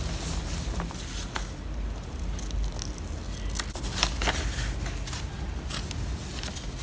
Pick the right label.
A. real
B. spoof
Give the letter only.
A